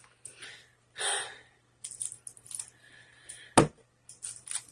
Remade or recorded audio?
recorded